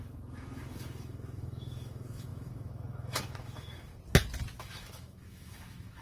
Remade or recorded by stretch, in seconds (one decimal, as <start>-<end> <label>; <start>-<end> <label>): 0.0-3.9 remade; 3.9-4.6 recorded; 4.6-6.0 remade